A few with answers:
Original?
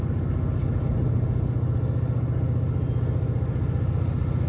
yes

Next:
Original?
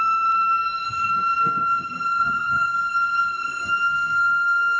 no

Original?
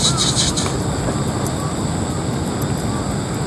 yes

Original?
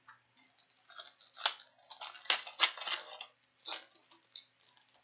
yes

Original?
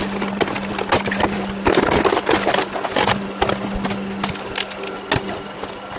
yes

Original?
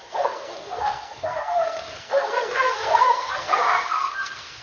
no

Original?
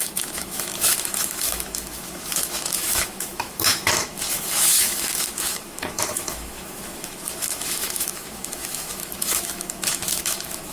no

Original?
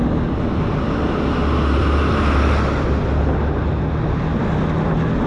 yes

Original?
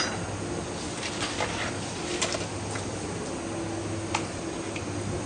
yes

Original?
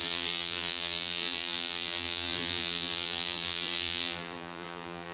no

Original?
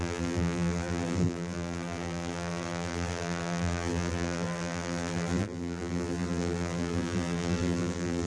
no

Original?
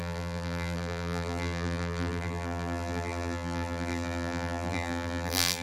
no